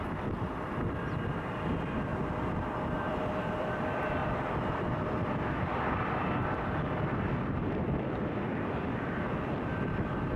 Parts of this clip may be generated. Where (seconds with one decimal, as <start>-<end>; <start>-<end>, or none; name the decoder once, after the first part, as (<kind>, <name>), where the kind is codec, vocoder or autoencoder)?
0.0-4.2 (vocoder, BigVGAN v2); 4.7-10.4